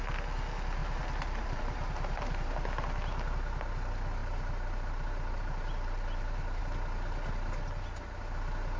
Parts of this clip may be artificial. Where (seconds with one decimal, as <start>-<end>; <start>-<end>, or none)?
0.8-2.5; 4.2-6.6

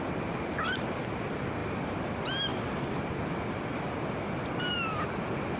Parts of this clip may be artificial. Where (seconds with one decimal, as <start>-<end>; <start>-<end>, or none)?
1.6-2.1; 2.5-4.6

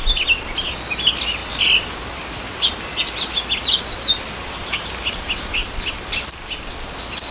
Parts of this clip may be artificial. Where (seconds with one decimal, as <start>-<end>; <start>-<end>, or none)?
1.4-4.9; 5.6-6.1

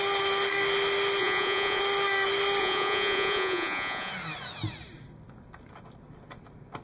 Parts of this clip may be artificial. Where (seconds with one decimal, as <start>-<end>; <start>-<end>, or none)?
1.2-1.8; 2.6-4.1

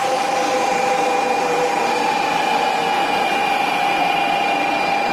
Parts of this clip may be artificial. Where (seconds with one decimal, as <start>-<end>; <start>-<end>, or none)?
none

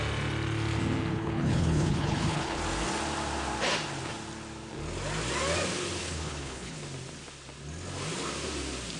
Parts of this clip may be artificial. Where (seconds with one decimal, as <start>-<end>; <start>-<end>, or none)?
1.1-2.6; 6.0-6.8